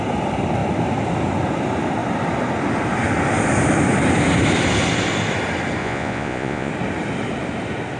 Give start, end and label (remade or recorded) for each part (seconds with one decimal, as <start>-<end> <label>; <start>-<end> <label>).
0.0-5.8 recorded; 5.8-6.7 remade; 6.7-8.0 recorded